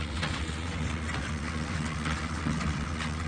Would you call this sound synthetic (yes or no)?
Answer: yes